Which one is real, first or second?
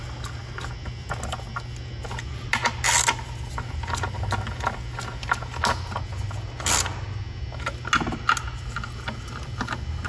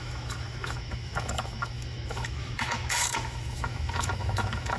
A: first